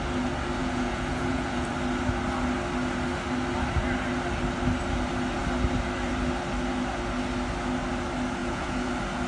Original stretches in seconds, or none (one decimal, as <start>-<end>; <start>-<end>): 0.0-0.6; 1.7-8.4; 8.9-9.3